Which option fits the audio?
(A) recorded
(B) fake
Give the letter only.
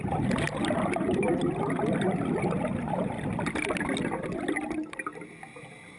A